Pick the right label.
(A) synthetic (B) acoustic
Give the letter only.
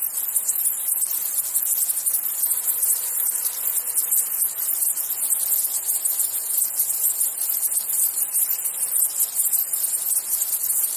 B